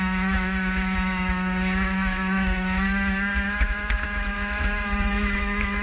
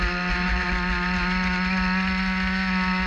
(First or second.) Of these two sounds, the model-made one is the first